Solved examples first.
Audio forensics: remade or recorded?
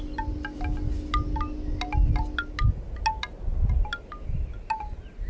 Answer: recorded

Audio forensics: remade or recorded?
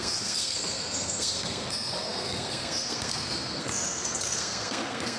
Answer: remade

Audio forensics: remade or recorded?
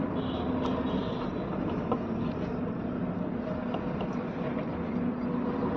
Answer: recorded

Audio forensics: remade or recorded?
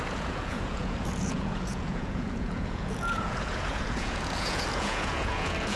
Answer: remade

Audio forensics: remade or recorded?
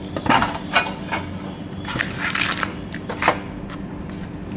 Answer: recorded